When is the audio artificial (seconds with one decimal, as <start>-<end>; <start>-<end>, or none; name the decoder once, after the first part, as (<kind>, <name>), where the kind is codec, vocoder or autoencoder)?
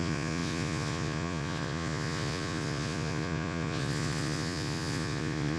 0.0-5.6 (vocoder, Vocos)